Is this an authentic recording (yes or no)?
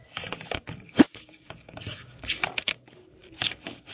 no